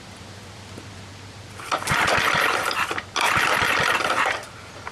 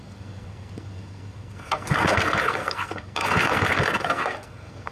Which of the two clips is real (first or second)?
first